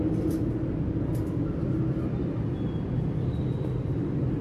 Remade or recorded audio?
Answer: recorded